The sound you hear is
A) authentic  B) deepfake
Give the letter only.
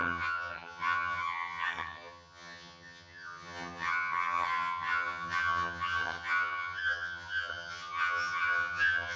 B